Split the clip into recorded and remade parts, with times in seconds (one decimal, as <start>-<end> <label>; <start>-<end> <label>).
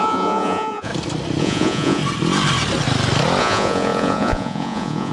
0.0-0.9 remade; 0.9-1.4 recorded; 1.4-2.0 remade; 2.0-3.4 recorded; 3.4-5.1 remade